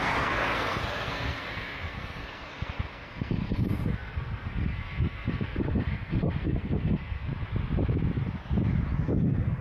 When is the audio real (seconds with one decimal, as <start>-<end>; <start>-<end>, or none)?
7.3-9.0